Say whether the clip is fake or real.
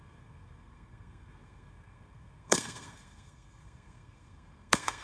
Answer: fake